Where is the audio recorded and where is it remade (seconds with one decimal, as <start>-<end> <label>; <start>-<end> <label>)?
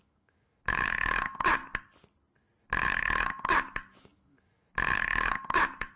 0.0-1.6 remade; 1.6-2.6 recorded; 2.6-6.0 remade